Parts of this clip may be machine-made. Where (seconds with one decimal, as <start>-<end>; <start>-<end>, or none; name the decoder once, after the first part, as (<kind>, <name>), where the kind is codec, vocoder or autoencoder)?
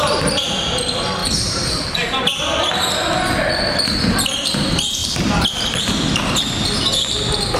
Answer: 1.2-2.2 (vocoder, BigVGAN v2); 5.0-6.1